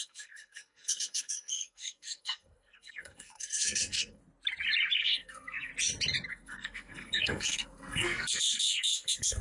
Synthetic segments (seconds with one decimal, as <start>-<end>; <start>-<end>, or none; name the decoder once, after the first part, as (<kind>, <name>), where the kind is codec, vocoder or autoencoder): 0.0-4.2 (codec, SNAC); 5.0-5.7; 6.3-9.4